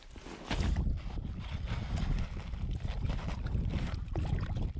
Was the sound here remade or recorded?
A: recorded